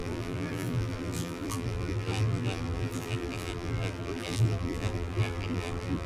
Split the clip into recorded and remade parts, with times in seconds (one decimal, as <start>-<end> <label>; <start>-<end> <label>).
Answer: 0.0-6.1 remade